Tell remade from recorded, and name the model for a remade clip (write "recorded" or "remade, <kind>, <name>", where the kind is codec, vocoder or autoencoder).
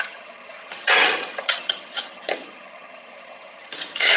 remade, vocoder, HiFi-GAN